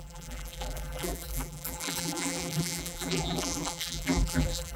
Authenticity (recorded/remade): remade